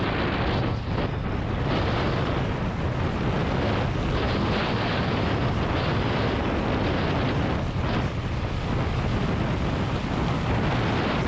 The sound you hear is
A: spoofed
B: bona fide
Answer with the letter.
B